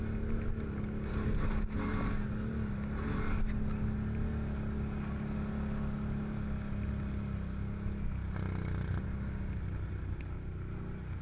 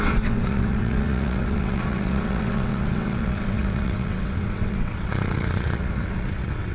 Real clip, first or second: first